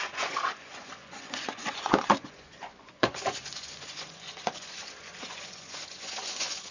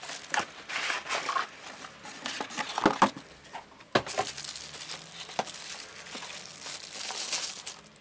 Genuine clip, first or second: second